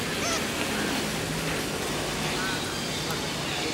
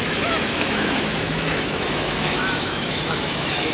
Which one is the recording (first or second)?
first